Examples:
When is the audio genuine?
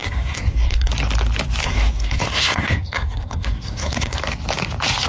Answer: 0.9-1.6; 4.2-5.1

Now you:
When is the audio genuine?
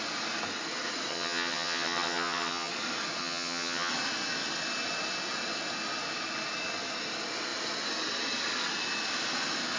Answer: 0.0-1.1; 2.7-3.2; 3.9-9.8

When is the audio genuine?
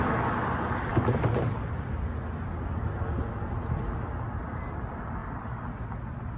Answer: 0.0-6.4